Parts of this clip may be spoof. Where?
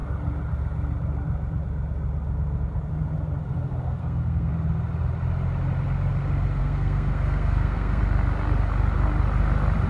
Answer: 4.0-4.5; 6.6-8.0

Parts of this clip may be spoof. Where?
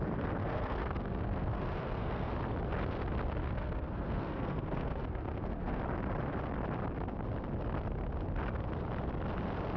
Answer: 0.4-2.3; 3.4-5.8